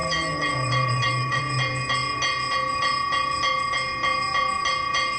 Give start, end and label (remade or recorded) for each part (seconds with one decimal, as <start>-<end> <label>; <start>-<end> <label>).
0.0-1.4 remade; 1.4-5.2 recorded